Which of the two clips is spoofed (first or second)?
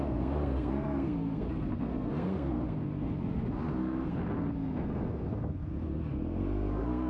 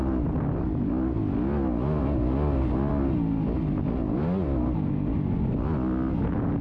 first